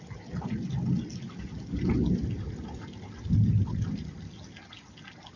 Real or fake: real